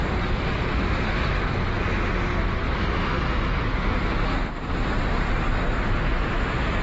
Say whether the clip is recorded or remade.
recorded